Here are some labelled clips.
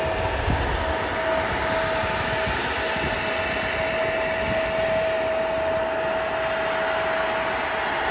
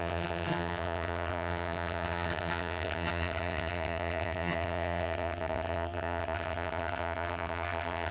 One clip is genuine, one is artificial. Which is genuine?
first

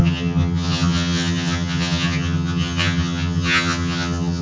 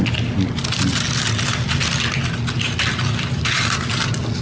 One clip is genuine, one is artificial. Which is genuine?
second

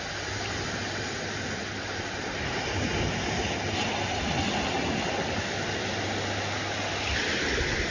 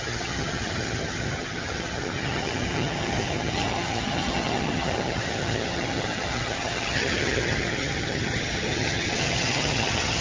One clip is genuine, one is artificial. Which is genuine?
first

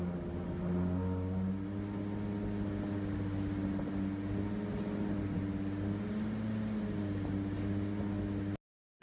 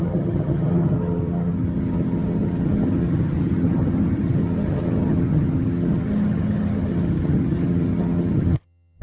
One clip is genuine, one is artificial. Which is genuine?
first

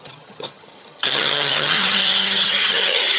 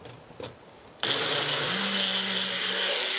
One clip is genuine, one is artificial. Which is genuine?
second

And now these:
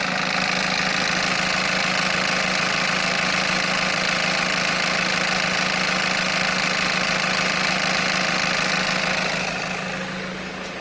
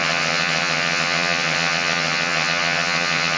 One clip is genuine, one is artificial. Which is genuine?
first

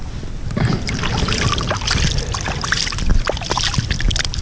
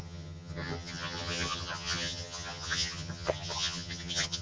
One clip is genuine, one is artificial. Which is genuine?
first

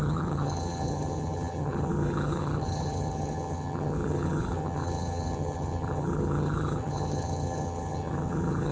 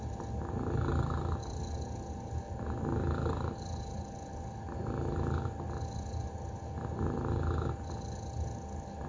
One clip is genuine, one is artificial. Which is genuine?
second